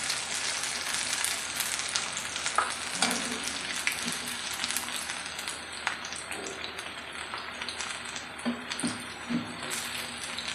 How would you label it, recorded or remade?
recorded